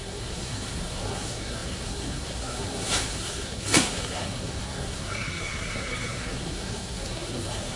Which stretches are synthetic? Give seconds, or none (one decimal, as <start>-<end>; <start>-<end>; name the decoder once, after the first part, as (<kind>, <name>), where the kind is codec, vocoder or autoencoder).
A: 0.0-7.8 (codec, SNAC)